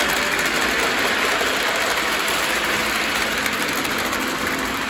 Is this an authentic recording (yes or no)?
no